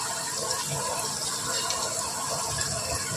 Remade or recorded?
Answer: recorded